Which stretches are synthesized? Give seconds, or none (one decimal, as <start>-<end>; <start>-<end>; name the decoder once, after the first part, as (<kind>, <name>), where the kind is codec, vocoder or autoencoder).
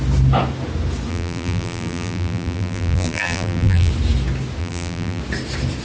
1.1-3.9 (vocoder, BigVGAN v2); 4.6-5.2